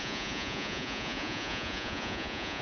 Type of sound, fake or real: fake